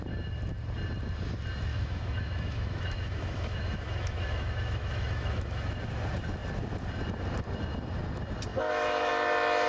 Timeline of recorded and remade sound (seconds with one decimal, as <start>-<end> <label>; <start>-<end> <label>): 0.0-1.7 recorded; 1.7-5.7 remade; 5.7-8.5 recorded; 8.5-9.1 remade; 9.1-9.7 recorded